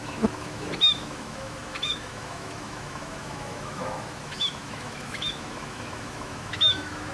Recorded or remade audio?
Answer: remade